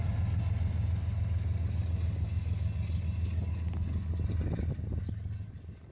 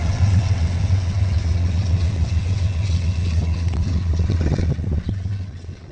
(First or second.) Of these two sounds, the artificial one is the second